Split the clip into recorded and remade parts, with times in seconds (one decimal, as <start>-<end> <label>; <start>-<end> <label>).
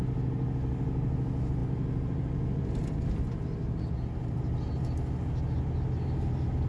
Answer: 0.0-6.7 recorded